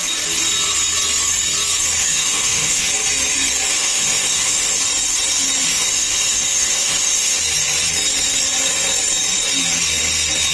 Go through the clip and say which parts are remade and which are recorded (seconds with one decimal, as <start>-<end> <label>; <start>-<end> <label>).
0.0-2.0 recorded; 2.0-2.9 remade; 2.9-3.7 recorded; 3.7-4.7 remade; 4.7-5.7 recorded; 5.7-7.4 remade; 7.4-10.5 recorded